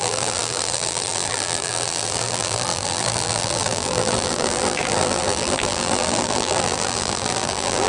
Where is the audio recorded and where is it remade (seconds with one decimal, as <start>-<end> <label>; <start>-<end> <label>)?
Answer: 0.0-7.9 remade